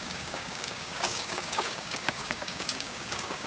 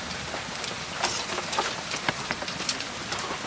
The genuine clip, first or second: second